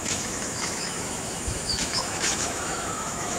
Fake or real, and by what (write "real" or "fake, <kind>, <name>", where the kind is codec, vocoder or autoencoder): fake, autoencoder, DAC-VAE